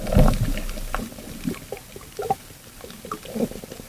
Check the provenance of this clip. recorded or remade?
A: recorded